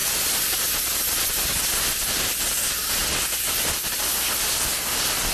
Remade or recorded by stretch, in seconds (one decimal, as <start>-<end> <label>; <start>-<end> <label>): 0.0-5.3 recorded

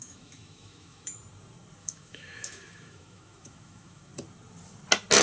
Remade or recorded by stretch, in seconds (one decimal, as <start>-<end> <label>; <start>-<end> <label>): 0.0-1.2 remade; 1.2-1.8 recorded; 1.8-4.1 remade; 4.1-5.2 recorded

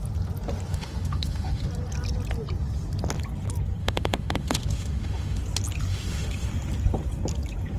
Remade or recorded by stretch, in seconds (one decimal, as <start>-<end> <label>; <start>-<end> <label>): 0.0-0.7 recorded; 0.7-1.7 remade; 1.7-3.8 recorded; 3.8-5.4 remade; 5.4-5.9 recorded; 5.9-6.5 remade; 6.5-7.8 recorded